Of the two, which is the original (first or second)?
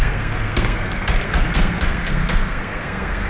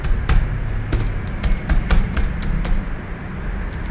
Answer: second